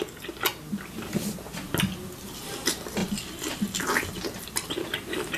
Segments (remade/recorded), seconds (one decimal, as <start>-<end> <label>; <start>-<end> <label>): 0.0-5.4 recorded